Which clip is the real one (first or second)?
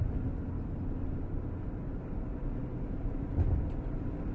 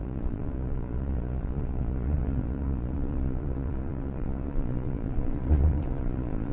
first